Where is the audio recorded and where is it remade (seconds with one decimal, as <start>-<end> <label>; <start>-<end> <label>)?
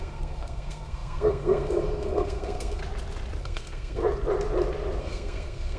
0.0-2.8 remade; 2.8-3.4 recorded; 3.4-4.0 remade; 4.0-5.0 recorded; 5.0-5.8 remade